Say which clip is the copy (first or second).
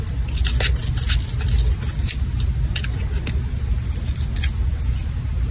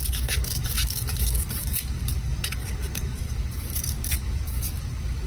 second